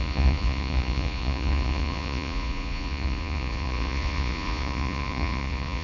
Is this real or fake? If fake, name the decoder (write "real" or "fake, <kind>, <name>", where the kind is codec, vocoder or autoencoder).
fake, vocoder, Vocos